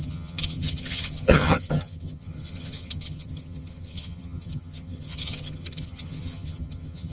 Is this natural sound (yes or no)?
no